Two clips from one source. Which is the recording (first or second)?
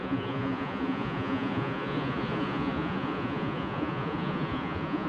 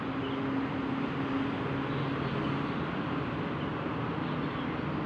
second